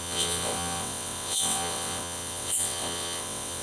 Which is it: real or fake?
fake